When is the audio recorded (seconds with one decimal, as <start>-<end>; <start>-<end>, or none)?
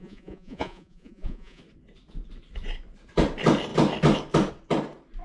1.6-5.2